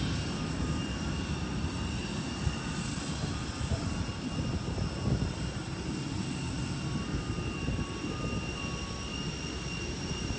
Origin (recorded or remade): recorded